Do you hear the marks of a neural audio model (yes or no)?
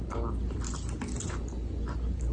no